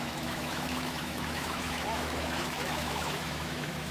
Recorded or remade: remade